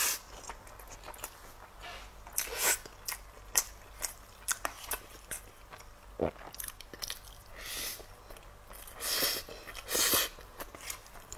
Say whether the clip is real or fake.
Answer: real